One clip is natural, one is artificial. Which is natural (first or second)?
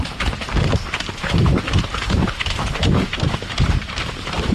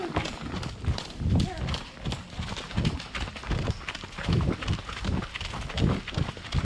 second